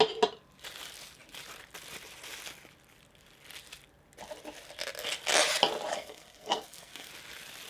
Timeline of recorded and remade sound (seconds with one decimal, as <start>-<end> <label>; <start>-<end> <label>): 0.0-5.9 recorded; 5.9-7.1 remade; 7.1-7.7 recorded